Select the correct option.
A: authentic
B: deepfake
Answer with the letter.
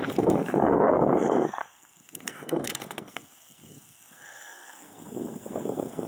B